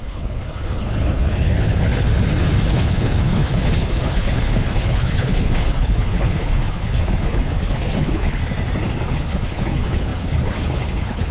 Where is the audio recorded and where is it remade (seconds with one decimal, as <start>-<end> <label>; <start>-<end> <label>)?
0.0-2.1 remade; 2.1-2.7 recorded; 2.7-8.4 remade; 8.4-9.1 recorded; 9.1-11.3 remade